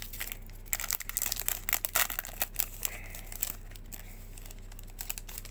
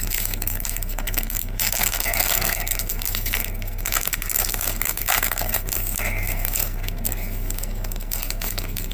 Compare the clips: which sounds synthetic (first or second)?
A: second